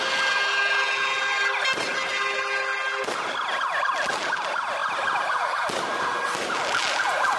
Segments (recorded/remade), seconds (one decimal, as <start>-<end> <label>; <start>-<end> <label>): 0.0-4.8 recorded; 4.8-5.6 remade; 5.6-7.4 recorded